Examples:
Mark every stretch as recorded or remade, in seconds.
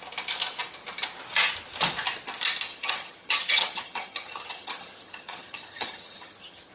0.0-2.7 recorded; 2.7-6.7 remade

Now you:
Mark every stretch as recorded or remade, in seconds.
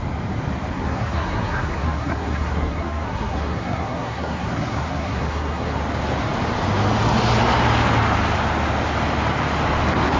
0.0-0.7 recorded; 0.7-5.8 remade; 5.8-10.2 recorded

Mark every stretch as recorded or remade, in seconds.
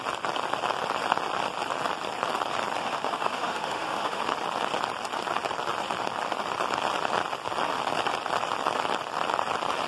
0.0-2.8 recorded; 2.8-4.2 remade; 4.2-9.9 recorded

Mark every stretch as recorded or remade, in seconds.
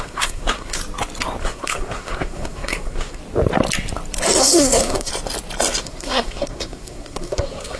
0.0-0.8 remade; 0.8-1.4 recorded; 1.4-3.2 remade; 3.2-4.4 recorded; 4.4-5.1 remade; 5.1-5.8 recorded; 5.8-7.8 remade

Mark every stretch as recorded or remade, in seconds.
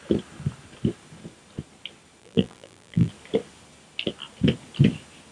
0.0-2.2 recorded; 2.2-3.1 remade; 3.1-5.3 recorded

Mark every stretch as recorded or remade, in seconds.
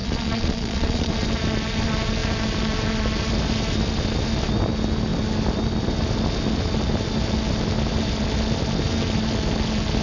0.0-1.1 remade; 1.1-10.0 recorded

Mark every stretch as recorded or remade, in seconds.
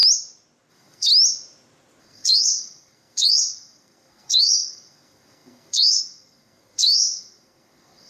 0.0-0.7 recorded; 0.7-1.1 remade; 1.1-2.0 recorded; 2.0-8.1 remade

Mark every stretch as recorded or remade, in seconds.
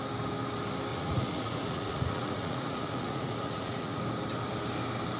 0.0-0.9 recorded; 0.9-4.0 remade; 4.0-5.2 recorded